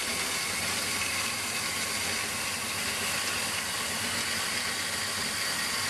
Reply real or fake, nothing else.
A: real